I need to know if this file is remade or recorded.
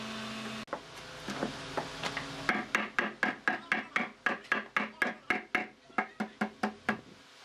recorded